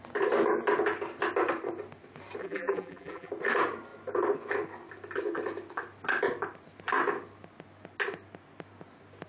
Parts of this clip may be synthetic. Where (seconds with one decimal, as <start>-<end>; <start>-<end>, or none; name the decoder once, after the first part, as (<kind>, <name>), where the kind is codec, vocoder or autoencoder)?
2.4-3.3 (vocoder, BigVGAN v2)